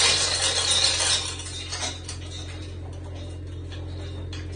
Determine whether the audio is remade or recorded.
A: recorded